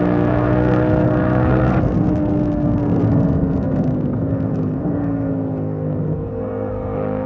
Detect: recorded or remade remade